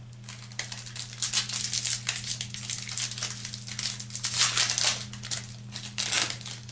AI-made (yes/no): no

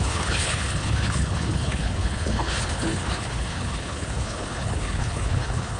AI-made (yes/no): yes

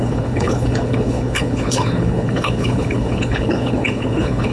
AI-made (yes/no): yes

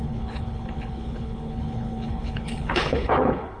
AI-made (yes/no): yes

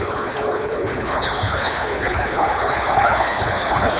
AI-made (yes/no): yes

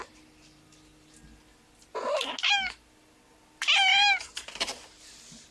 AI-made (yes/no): no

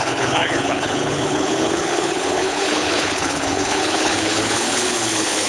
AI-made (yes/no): yes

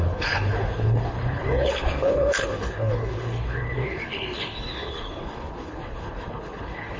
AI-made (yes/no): yes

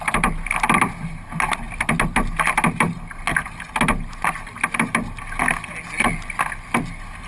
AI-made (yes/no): no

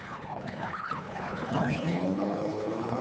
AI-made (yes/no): yes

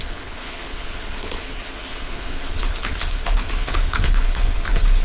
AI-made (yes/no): yes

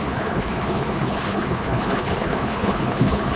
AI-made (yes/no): yes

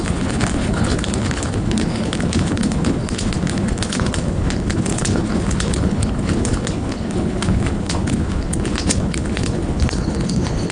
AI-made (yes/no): yes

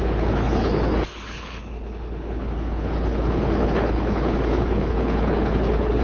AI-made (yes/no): yes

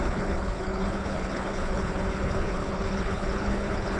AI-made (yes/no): yes